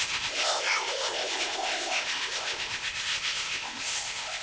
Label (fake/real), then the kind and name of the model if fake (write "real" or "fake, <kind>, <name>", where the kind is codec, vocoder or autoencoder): fake, codec, ZipCodec